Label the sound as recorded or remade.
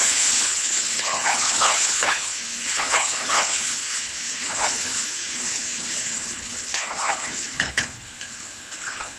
remade